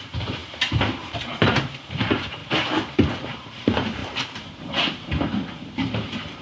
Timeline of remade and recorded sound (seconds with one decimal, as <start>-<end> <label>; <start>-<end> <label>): 0.0-2.4 remade; 2.4-3.1 recorded; 3.1-4.0 remade; 4.0-4.6 recorded; 4.6-6.4 remade